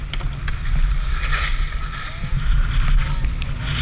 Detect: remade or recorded recorded